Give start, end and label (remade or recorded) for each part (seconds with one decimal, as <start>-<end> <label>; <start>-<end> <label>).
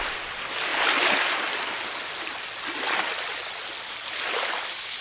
0.0-5.0 recorded